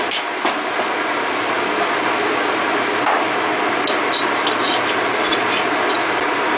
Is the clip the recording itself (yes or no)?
yes